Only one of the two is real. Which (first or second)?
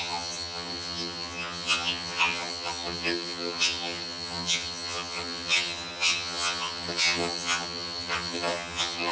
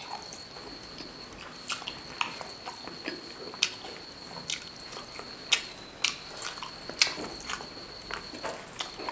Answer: second